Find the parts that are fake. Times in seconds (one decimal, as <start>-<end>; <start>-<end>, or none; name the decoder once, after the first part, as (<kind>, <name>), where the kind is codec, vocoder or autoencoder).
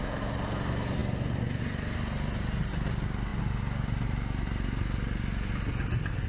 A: none